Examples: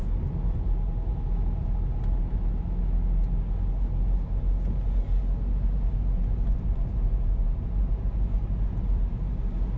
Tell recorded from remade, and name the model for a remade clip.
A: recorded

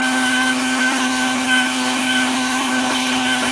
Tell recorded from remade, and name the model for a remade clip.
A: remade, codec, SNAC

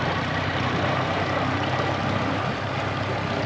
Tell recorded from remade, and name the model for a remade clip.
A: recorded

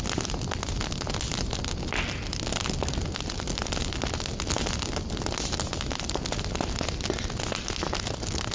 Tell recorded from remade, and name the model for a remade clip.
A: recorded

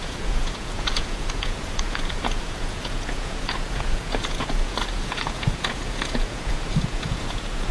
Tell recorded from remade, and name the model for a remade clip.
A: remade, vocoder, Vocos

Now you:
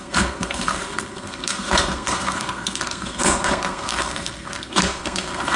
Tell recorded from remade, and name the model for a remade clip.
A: remade, codec, SNAC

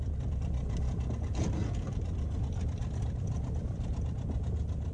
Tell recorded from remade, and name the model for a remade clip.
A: recorded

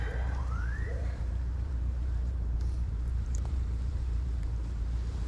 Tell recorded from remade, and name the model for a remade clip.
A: remade, vocoder, BigVGAN v2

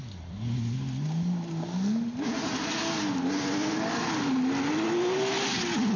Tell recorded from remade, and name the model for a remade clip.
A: recorded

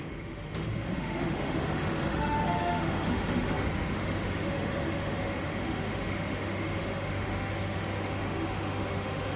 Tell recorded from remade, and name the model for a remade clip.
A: remade, autoencoder, DAC-VAE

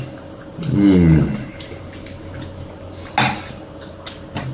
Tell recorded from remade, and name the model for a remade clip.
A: recorded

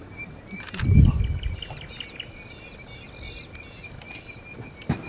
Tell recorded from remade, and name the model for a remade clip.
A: recorded